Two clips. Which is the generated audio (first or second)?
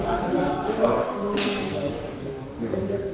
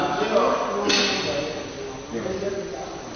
first